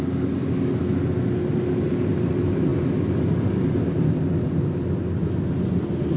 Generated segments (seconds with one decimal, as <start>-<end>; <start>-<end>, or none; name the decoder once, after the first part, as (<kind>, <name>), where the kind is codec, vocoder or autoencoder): none